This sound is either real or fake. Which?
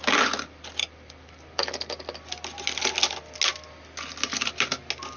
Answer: real